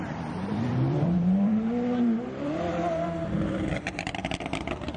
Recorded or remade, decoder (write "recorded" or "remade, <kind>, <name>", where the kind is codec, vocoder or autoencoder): remade, vocoder, BigVGAN v2